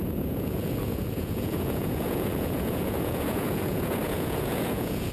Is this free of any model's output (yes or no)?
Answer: no